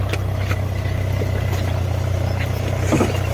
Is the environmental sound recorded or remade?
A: recorded